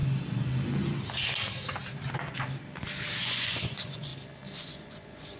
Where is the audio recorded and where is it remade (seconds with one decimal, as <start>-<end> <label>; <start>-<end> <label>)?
0.0-3.2 recorded; 3.2-4.1 remade; 4.1-4.6 recorded; 4.6-5.4 remade